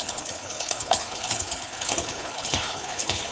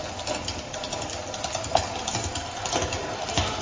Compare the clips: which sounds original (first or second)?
second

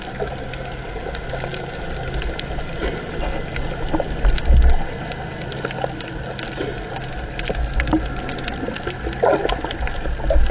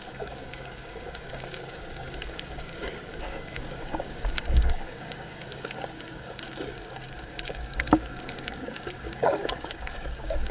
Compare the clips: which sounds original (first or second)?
first